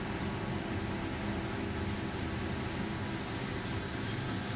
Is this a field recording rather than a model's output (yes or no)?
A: yes